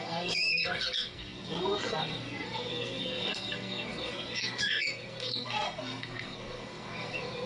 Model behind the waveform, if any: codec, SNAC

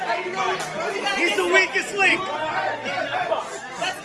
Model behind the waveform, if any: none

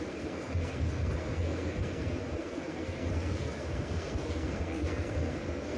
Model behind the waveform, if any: codec, SNAC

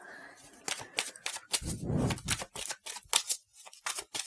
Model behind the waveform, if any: none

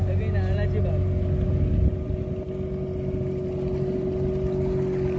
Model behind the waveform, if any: none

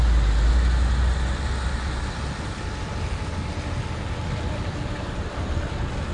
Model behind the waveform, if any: none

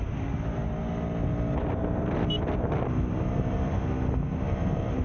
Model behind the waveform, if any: none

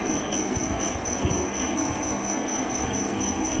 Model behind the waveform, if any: codec, SNAC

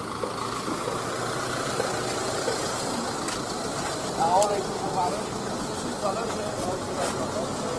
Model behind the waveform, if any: none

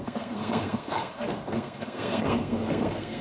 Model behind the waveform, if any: codec, SNAC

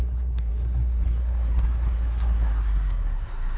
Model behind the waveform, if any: codec, SNAC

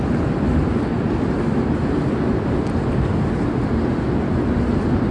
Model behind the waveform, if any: none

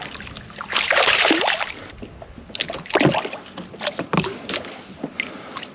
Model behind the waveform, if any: none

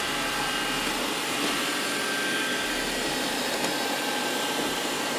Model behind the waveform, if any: none